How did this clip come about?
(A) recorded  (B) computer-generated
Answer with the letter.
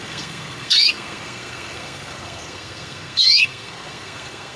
B